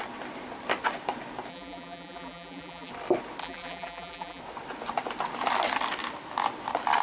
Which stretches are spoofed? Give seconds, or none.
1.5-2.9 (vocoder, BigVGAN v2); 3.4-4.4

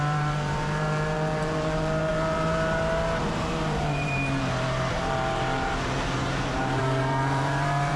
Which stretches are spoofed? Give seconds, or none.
0.0-8.0 (vocoder, BigVGAN v2)

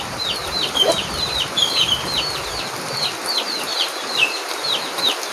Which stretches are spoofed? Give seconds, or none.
0.4-2.6 (vocoder, BigVGAN v2); 3.7-5.3